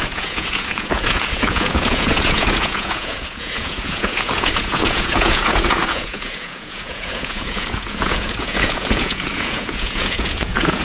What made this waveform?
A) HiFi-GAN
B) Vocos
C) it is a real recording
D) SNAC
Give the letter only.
B